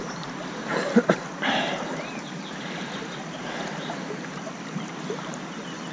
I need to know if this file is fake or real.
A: real